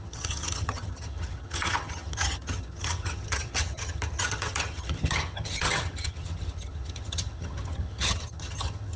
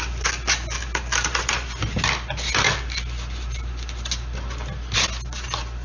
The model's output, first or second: first